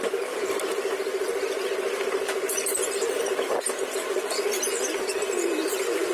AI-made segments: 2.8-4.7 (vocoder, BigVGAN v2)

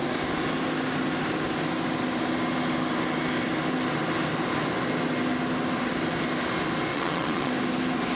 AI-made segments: 6.9-7.5 (vocoder, WaveNeXt)